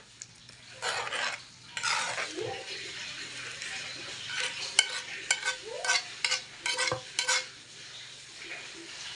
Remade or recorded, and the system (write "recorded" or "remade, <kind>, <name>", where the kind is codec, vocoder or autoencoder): recorded